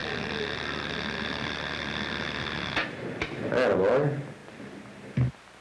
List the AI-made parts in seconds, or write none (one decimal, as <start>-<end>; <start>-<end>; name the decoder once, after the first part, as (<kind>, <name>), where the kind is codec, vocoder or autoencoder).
none